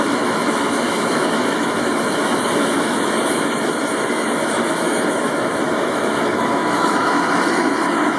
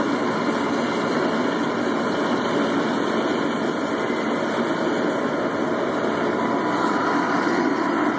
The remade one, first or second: first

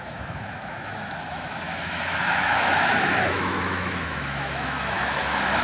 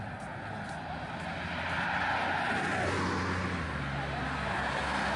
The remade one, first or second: first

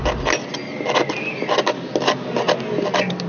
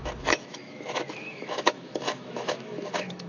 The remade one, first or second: second